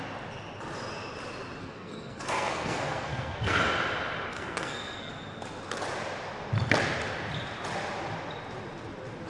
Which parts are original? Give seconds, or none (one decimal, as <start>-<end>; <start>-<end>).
0.0-1.6; 3.6-4.3; 5.1-9.3